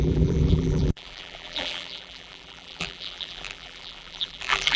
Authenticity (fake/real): fake